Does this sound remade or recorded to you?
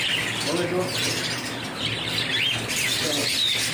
recorded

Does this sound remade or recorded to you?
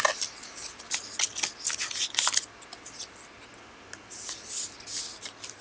recorded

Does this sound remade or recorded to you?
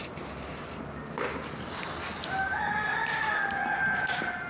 recorded